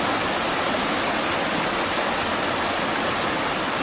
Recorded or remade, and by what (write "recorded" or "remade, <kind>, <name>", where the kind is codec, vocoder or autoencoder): recorded